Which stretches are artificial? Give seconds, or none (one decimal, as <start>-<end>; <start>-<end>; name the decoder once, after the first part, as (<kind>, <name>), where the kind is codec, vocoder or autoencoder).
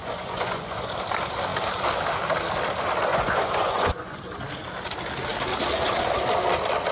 0.0-0.9 (vocoder, Vocos); 3.1-4.2